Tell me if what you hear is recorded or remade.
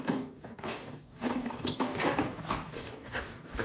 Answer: remade